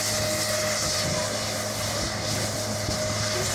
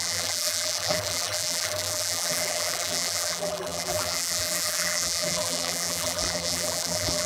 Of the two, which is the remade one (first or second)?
second